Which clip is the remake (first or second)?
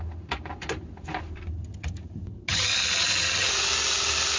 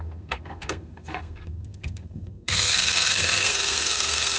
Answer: second